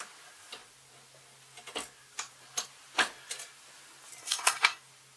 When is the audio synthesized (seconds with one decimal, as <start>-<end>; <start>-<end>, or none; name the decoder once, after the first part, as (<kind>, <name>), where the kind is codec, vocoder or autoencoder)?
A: 4.2-4.8 (codec, SNAC)